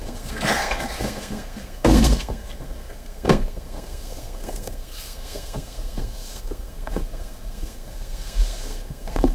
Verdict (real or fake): fake